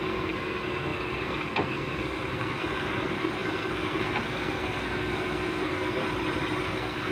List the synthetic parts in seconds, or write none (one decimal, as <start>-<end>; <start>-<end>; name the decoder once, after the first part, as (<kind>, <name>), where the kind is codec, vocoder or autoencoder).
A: 0.0-6.0 (codec, SNAC); 6.6-7.1

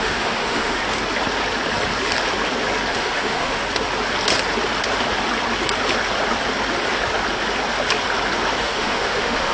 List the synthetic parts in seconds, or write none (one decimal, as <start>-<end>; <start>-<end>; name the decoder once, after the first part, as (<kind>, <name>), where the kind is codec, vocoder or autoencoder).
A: 0.0-0.8 (autoencoder, DAC-VAE); 2.9-3.6; 8.6-9.5

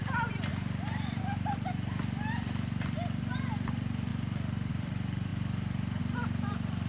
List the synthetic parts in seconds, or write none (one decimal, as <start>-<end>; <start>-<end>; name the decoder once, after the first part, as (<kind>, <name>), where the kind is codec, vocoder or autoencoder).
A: 0.0-4.1 (vocoder, BigVGAN v2); 4.7-6.9

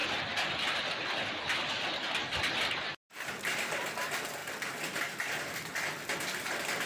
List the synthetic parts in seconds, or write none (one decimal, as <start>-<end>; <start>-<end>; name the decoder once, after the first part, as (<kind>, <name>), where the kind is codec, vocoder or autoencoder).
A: none

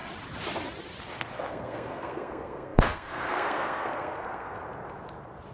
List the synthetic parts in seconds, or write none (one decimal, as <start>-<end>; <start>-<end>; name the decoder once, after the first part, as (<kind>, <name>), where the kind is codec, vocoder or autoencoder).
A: 1.5-4.6 (codec, SNAC)

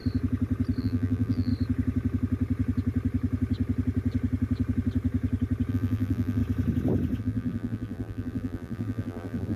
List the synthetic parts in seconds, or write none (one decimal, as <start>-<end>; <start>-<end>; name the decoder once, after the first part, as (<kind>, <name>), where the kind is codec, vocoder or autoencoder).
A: 0.8-1.5 (vocoder, BigVGAN v2); 5.7-6.4; 7.2-9.6